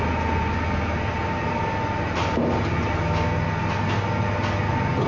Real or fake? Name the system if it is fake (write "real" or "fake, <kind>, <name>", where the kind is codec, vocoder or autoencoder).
real